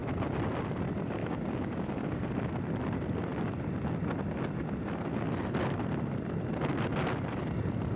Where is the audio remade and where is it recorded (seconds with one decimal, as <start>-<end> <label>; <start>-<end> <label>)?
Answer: 0.0-1.2 recorded; 1.2-2.3 remade; 2.3-8.0 recorded